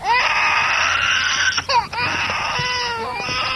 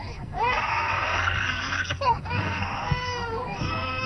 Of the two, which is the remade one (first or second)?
second